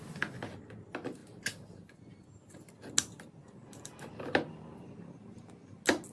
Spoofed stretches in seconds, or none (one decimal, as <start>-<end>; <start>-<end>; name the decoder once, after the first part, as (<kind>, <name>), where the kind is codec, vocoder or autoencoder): 1.2-2.2 (vocoder, BigVGAN v2); 3.4-4.1